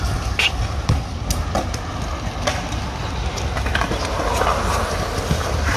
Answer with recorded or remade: recorded